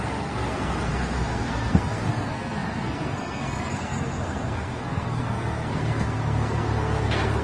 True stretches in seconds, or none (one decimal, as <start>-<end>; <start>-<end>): none